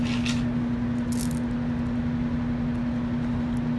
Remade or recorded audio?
recorded